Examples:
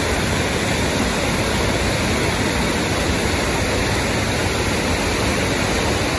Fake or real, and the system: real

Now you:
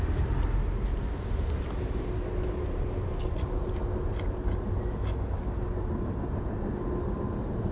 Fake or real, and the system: real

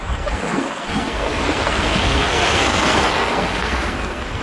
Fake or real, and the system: fake, codec, SNAC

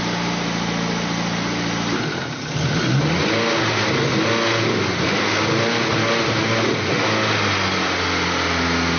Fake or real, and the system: real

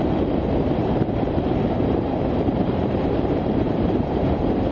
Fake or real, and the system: fake, vocoder, BigVGAN v2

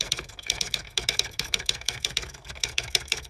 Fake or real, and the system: fake, codec, SNAC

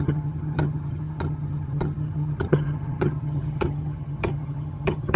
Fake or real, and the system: fake, vocoder, HiFi-GAN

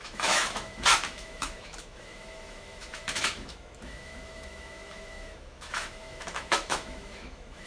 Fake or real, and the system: fake, autoencoder, DAC-VAE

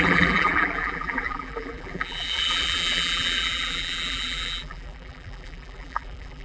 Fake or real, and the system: fake, vocoder, BigVGAN v2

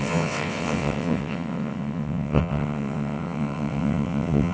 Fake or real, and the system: fake, vocoder, WaveNeXt